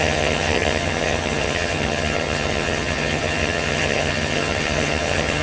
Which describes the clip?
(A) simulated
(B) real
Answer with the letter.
A